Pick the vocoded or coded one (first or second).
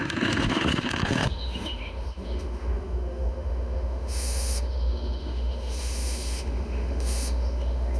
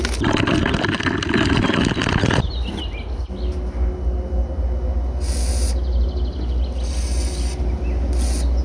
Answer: first